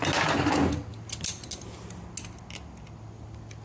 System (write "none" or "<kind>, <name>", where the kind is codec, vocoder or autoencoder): none